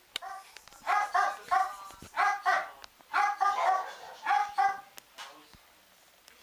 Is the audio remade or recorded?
recorded